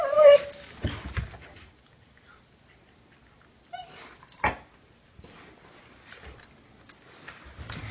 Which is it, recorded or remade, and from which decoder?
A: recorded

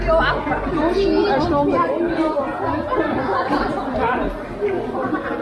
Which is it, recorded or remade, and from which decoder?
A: recorded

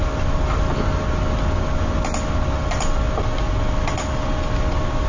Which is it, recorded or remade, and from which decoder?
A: recorded